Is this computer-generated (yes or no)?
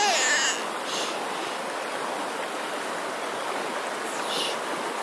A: no